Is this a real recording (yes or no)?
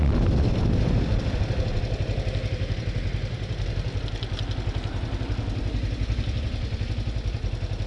yes